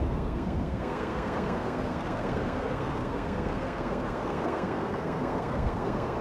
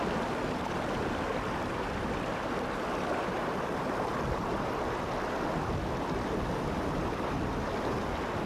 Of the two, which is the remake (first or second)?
first